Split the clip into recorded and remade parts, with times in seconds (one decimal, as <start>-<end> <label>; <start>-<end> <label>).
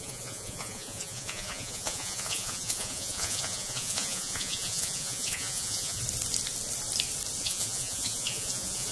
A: 0.0-6.0 remade; 6.0-7.4 recorded; 7.4-8.9 remade